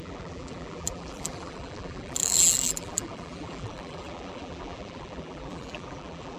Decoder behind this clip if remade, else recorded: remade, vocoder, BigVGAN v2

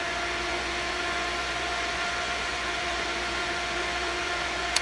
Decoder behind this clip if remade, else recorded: remade, vocoder, Vocos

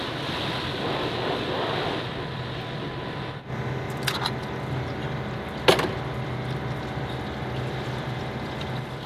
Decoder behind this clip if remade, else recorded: recorded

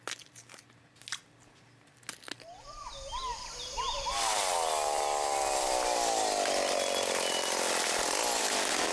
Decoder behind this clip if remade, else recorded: recorded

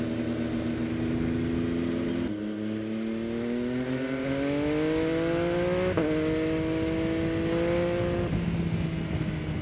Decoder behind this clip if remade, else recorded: recorded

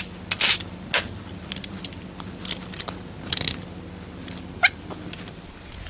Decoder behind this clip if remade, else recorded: recorded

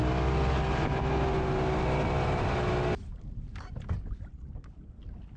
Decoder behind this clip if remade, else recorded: recorded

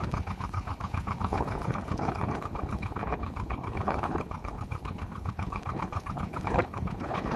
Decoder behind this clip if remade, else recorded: remade, codec, HILCodec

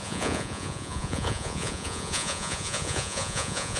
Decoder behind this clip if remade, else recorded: remade, vocoder, Vocos